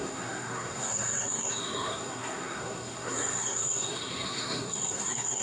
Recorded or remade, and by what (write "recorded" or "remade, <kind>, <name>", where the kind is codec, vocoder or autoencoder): remade, codec, SNAC